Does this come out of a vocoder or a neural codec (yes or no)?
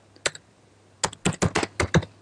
no